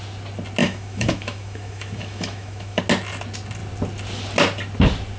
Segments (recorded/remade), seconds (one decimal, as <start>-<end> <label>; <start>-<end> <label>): 0.0-0.6 recorded; 0.6-2.8 remade; 2.8-5.2 recorded